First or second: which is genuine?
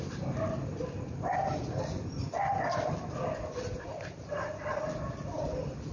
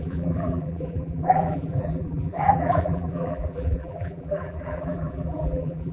first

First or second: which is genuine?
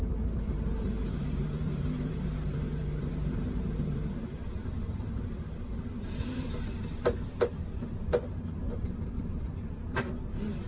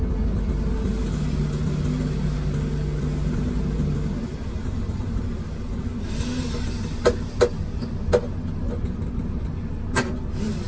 second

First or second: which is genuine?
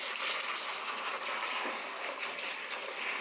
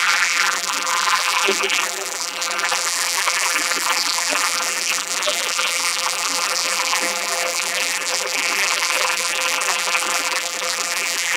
first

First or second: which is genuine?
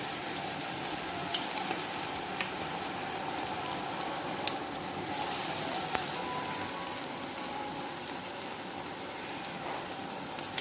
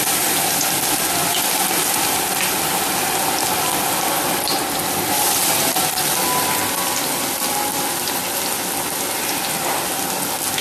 second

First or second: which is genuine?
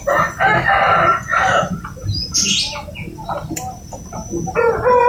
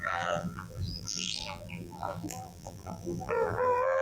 first